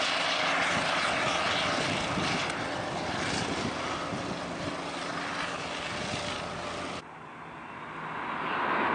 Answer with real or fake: real